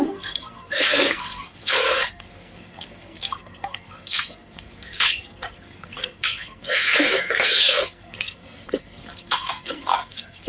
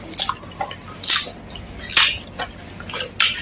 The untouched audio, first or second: second